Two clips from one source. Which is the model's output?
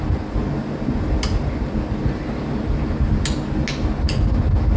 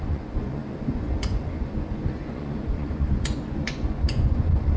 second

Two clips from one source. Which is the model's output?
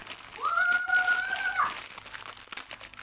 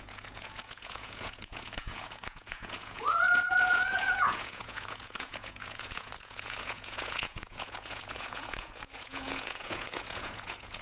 second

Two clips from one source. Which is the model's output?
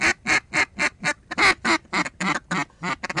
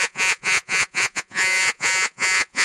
second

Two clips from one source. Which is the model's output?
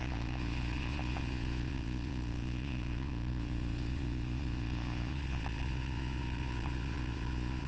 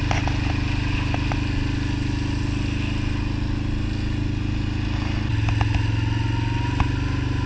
first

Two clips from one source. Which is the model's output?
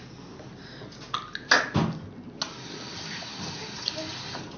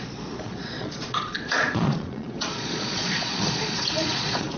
second